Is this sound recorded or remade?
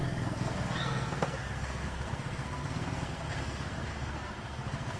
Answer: remade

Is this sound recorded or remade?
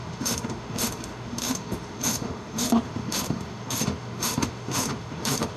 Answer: remade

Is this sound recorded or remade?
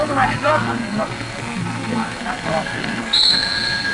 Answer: remade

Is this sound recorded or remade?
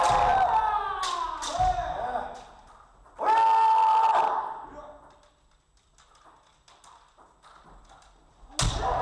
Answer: recorded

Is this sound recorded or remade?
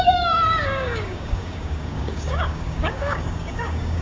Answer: remade